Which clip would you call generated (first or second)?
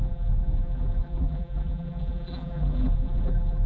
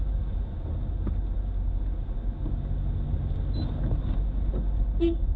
first